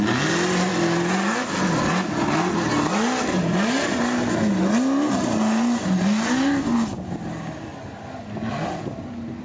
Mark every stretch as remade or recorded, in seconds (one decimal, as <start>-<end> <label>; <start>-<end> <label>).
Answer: 0.0-9.4 recorded